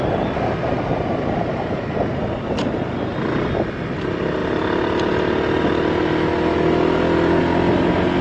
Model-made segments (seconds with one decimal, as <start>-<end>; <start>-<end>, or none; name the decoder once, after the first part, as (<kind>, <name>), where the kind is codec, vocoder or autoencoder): none